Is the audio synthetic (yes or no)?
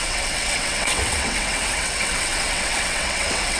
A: yes